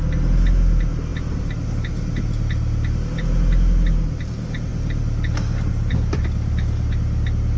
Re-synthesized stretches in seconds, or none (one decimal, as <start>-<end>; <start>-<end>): none